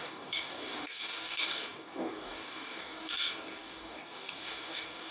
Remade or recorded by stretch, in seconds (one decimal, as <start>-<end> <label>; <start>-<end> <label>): 0.0-5.1 remade

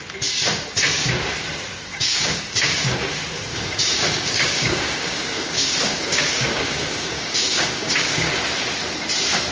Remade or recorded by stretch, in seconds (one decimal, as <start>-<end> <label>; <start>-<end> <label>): 0.0-1.9 recorded; 1.9-3.1 remade; 3.1-3.5 recorded; 3.5-8.3 remade; 8.3-9.5 recorded

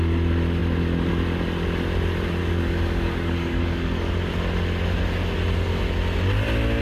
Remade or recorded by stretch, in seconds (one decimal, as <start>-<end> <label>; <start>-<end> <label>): 0.0-2.4 recorded; 2.4-4.1 remade; 4.1-6.8 recorded

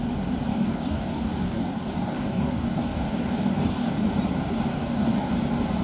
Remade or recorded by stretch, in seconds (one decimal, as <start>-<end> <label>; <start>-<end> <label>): 0.0-0.5 recorded; 0.5-4.0 remade; 4.0-4.7 recorded; 4.7-5.3 remade; 5.3-5.8 recorded